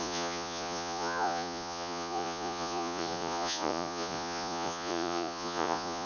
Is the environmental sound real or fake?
fake